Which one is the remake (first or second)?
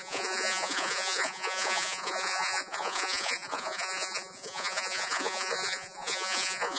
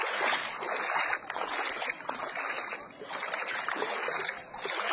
first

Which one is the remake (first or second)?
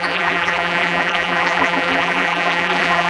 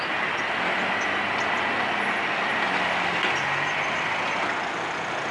first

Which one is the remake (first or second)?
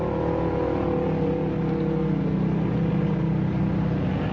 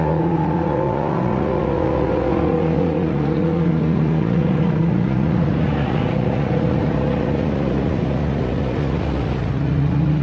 second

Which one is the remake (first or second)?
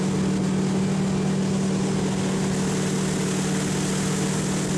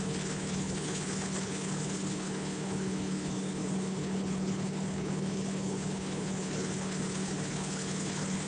second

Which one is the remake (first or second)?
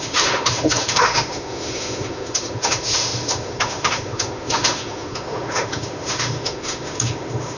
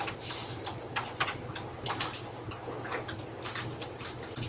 first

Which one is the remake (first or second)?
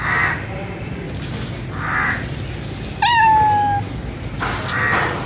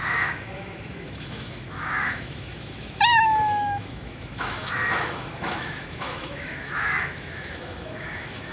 second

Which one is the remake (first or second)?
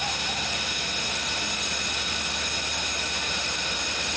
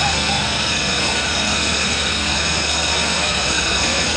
second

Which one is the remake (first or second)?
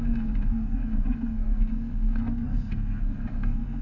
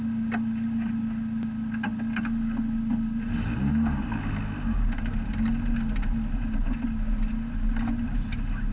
first